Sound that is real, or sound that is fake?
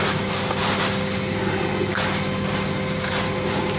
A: real